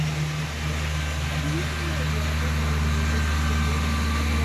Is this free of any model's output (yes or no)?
yes